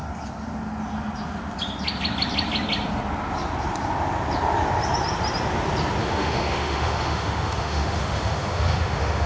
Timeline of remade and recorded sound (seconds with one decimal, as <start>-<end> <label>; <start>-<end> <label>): 0.0-6.0 recorded; 6.0-9.3 remade